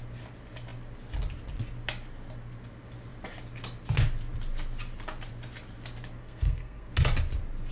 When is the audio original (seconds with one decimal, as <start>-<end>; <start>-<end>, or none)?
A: 0.0-6.2; 6.9-7.7